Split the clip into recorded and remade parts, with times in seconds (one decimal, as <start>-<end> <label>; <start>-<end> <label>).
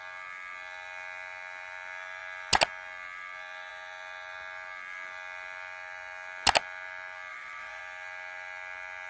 0.0-7.3 recorded; 7.3-7.8 remade; 7.8-9.1 recorded